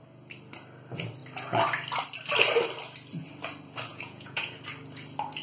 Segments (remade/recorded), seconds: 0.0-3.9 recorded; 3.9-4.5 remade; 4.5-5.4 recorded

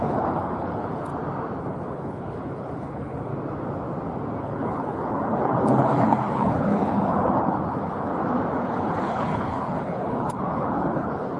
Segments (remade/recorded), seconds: 0.0-1.1 remade; 1.1-1.6 recorded; 1.6-3.3 remade; 3.3-4.4 recorded; 4.4-8.1 remade; 8.1-8.6 recorded; 8.6-11.4 remade